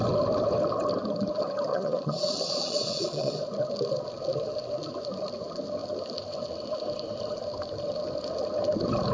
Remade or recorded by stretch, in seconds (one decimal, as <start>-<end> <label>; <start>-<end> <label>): 0.0-1.7 recorded; 1.7-3.3 remade; 3.3-9.1 recorded